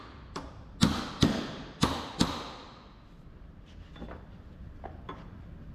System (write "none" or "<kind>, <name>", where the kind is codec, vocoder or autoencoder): none